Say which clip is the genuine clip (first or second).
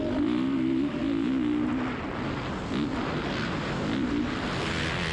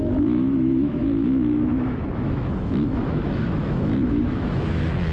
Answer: first